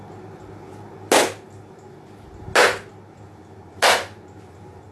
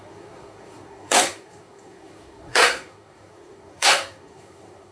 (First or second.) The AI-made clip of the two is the second